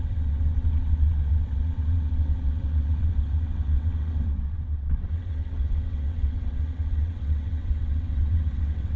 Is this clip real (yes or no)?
no